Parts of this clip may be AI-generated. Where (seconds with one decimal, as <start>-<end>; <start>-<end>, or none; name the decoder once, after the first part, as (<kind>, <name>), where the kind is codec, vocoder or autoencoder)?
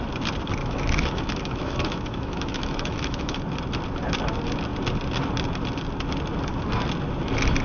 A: 0.6-3.4 (autoencoder, DAC-VAE)